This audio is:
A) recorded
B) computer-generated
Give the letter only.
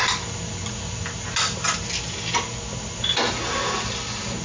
A